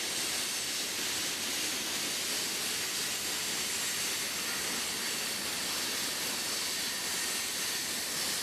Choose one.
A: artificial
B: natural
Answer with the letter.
B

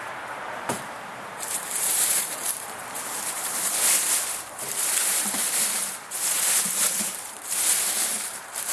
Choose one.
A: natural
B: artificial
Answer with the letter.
B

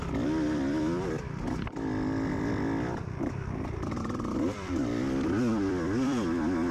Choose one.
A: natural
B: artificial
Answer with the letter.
B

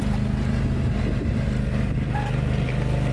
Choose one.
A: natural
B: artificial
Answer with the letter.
A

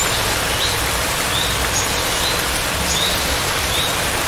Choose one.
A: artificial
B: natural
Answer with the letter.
B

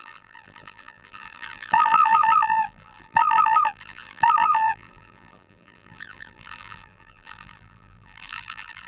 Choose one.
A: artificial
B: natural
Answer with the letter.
A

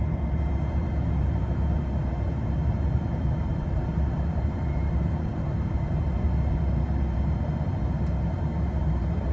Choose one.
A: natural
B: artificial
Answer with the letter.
B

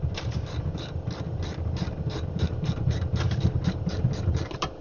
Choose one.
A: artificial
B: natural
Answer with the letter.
A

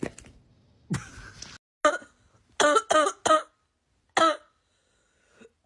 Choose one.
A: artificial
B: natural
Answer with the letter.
B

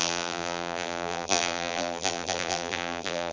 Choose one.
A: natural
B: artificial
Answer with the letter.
B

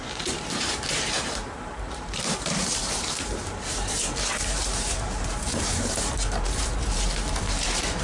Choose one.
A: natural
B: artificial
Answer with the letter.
B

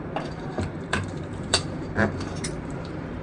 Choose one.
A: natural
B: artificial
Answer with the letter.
B